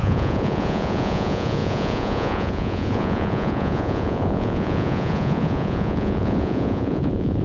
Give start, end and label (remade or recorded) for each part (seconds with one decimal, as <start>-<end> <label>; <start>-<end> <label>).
0.0-7.4 remade